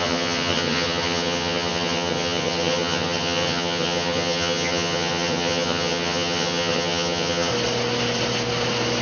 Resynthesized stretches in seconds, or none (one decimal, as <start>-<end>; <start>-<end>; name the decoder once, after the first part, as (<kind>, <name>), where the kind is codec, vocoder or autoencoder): 0.0-7.5 (vocoder, HiFi-GAN)